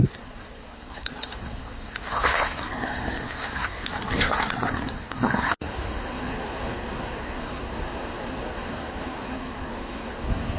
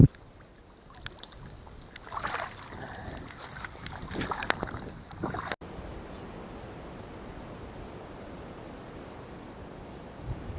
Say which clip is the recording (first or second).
second